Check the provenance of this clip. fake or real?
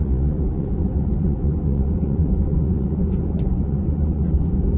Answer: fake